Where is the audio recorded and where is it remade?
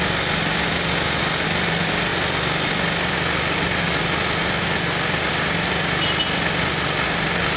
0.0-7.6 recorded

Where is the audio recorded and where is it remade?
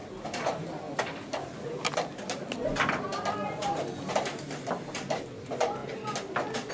0.0-6.7 recorded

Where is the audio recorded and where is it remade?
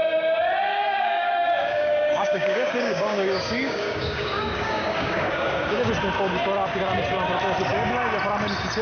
0.0-0.7 recorded; 0.7-5.9 remade; 5.9-8.8 recorded